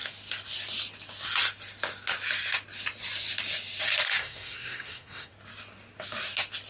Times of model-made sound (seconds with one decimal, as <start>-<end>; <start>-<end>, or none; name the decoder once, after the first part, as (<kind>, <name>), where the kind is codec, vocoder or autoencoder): 4.2-5.3 (codec, SNAC)